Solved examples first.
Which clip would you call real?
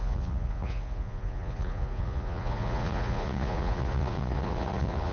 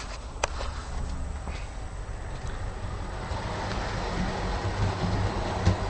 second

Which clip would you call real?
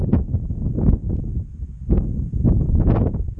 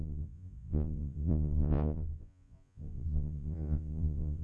first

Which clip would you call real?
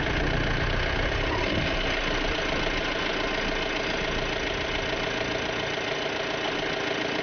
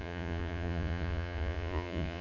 first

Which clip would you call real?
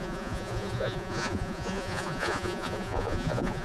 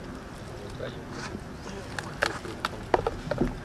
second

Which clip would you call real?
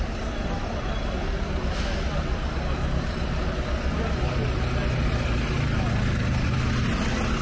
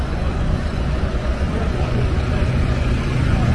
first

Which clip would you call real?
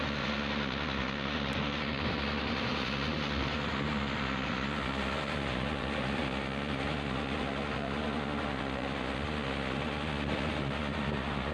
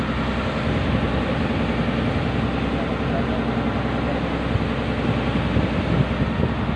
second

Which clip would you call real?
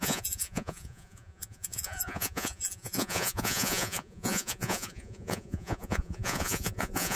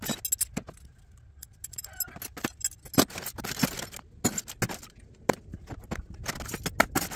second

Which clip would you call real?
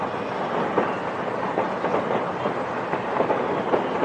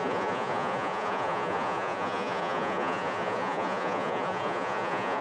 first